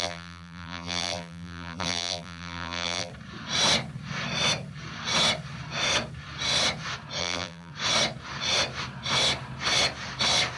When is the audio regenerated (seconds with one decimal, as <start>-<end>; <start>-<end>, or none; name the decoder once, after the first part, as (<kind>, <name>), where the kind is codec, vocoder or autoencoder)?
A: 0.0-3.1 (vocoder, BigVGAN v2); 7.2-7.7